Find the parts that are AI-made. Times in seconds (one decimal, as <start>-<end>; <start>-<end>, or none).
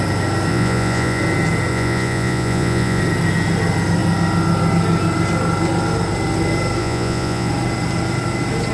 0.5-1.2; 1.7-3.0; 6.8-7.5